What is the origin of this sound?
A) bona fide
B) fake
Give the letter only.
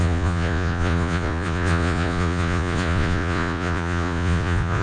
B